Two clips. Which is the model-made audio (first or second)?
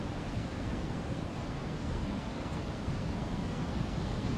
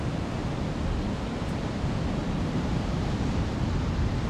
first